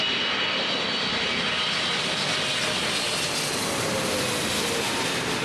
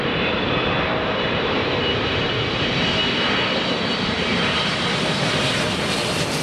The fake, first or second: second